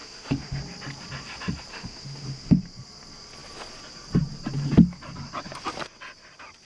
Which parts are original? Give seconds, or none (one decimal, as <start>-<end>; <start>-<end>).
0.6-1.7; 2.6-6.7